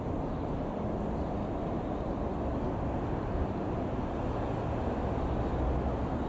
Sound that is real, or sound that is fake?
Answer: real